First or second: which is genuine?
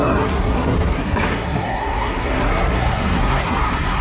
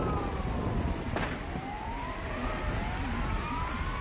second